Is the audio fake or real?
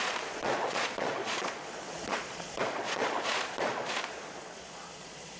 fake